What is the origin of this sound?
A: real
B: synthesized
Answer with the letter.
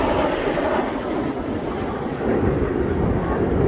A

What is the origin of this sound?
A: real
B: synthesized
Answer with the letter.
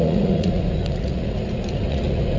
B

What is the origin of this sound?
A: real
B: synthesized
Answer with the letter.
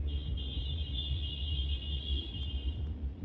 B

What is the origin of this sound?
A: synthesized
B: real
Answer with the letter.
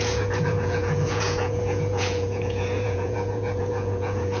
A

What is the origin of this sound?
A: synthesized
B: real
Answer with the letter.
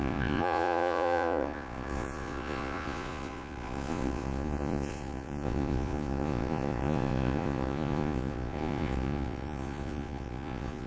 A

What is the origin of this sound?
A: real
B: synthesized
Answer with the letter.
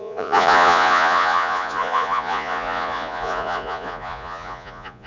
B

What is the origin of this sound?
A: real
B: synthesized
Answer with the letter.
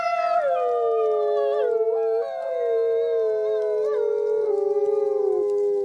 A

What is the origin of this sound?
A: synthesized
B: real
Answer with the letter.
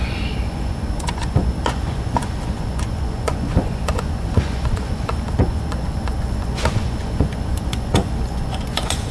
A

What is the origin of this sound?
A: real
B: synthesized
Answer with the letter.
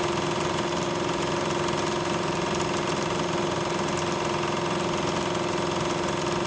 A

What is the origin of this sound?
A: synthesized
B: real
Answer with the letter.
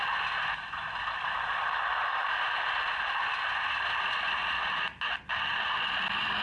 B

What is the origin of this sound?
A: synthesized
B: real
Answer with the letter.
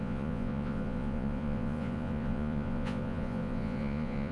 A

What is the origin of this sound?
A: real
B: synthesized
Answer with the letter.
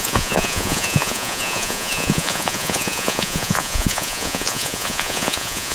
B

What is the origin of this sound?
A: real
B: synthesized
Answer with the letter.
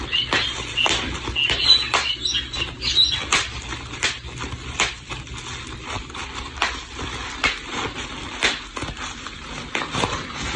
A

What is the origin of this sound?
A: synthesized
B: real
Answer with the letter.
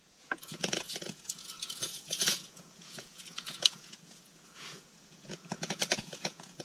A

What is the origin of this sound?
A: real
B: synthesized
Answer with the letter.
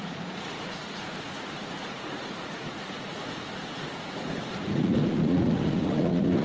B